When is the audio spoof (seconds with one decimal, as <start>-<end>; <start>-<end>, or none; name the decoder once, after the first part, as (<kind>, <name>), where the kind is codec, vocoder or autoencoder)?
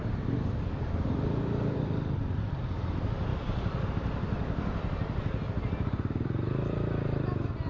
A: 0.0-3.3 (vocoder, BigVGAN v2); 3.9-7.7